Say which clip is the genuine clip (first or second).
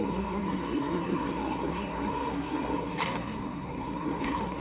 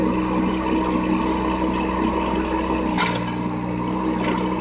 second